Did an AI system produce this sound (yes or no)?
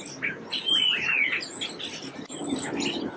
no